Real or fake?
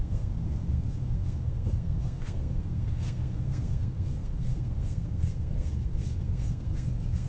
fake